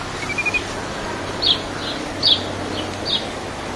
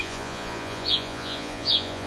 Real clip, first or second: first